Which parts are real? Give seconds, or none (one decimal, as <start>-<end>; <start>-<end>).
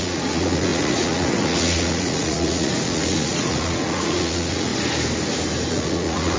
4.7-5.7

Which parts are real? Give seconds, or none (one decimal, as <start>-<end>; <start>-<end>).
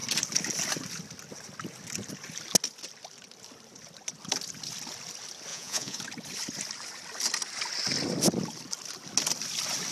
0.0-5.5; 6.0-9.9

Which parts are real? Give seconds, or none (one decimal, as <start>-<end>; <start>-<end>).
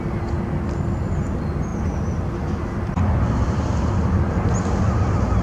0.0-5.4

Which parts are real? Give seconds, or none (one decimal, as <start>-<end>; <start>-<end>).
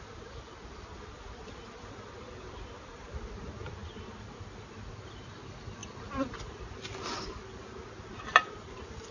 0.0-9.1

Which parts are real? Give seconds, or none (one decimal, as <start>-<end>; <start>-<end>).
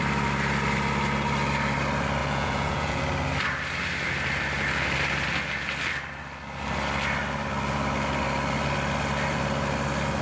0.0-2.2; 3.0-10.2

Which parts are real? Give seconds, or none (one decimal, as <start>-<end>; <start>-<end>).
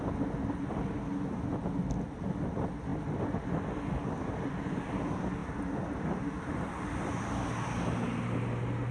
0.0-8.9